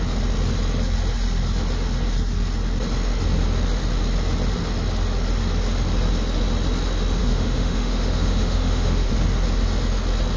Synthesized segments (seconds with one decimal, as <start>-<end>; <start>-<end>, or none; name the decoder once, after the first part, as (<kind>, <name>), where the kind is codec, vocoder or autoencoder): 7.2-9.1 (autoencoder, DAC-VAE)